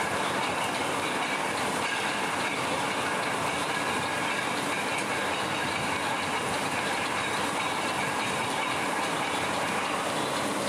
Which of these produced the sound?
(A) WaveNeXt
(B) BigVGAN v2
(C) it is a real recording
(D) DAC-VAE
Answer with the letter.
B